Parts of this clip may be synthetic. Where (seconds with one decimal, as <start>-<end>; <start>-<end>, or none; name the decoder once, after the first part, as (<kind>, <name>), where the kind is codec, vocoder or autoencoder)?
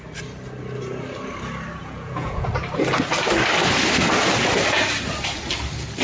1.8-2.5 (vocoder, Vocos)